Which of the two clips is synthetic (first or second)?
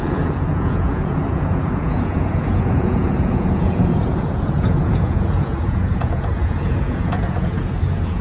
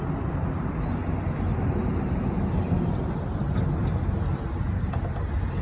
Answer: first